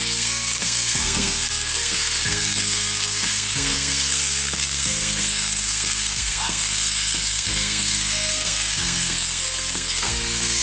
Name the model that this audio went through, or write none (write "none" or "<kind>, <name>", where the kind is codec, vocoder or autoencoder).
codec, SNAC